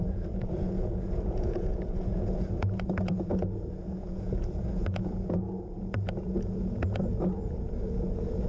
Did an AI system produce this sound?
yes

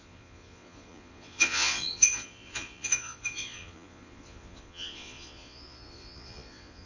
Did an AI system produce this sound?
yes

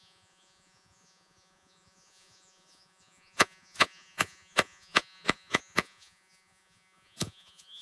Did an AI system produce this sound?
yes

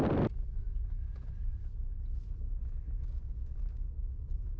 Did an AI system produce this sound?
no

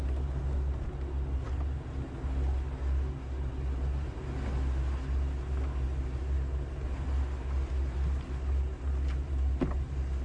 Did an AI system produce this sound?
no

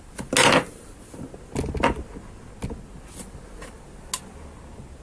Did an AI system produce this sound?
no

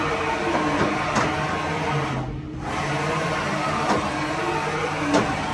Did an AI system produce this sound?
no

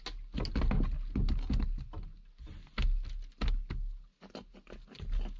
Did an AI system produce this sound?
no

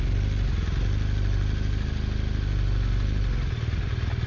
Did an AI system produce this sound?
no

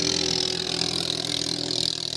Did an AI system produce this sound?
no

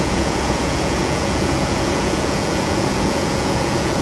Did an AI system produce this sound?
yes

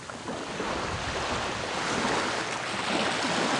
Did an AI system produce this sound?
no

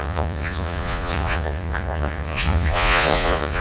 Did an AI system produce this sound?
yes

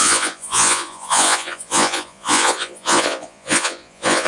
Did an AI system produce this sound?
yes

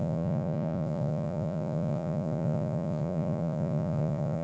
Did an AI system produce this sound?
yes